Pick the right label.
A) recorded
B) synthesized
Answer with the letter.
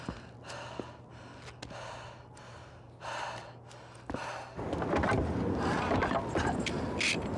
A